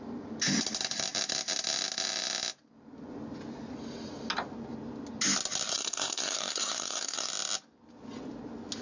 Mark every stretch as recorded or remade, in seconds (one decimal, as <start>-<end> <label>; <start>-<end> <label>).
0.0-5.7 recorded; 5.7-7.3 remade; 7.3-8.8 recorded